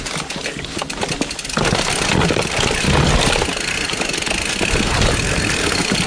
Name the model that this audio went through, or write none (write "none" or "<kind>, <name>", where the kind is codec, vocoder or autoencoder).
none